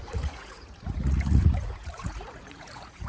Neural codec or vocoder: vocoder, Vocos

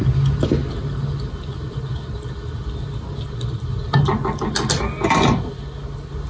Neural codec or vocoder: none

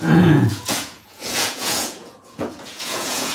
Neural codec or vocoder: vocoder, Vocos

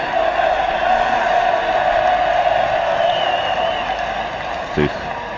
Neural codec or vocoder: none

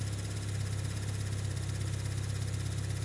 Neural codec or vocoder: none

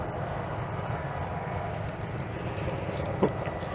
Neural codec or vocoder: none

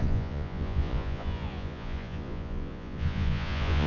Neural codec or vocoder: vocoder, Vocos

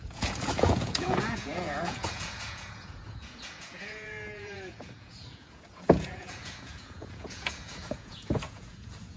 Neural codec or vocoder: vocoder, Vocos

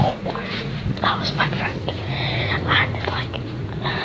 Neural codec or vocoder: vocoder, Vocos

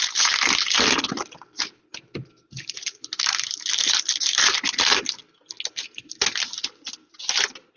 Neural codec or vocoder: none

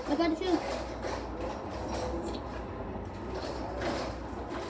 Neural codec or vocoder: none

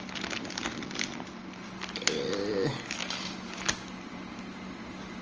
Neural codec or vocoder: none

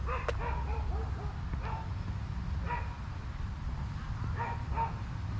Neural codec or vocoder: none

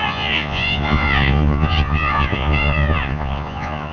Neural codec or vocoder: vocoder, Vocos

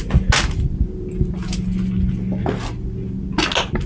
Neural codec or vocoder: none